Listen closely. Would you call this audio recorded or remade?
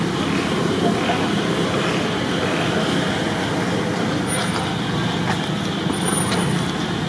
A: recorded